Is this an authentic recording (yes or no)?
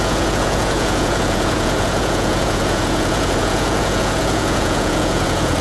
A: no